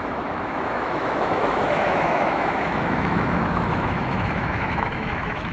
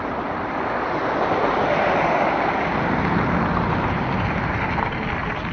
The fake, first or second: first